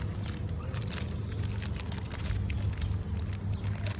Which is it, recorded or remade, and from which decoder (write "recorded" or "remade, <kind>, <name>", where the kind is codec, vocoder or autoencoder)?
recorded